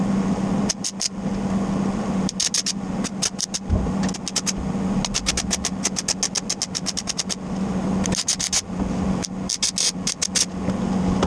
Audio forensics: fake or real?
real